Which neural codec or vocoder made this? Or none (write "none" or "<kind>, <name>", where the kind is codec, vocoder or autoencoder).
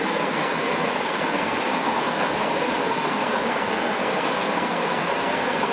codec, SNAC